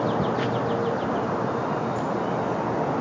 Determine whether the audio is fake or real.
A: real